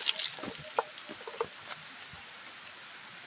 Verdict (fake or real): real